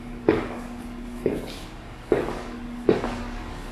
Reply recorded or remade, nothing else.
remade